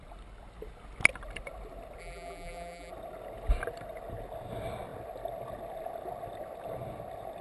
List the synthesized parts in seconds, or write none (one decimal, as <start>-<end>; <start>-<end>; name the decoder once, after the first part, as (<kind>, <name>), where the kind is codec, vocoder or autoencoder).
2.0-2.9 (vocoder, BigVGAN v2)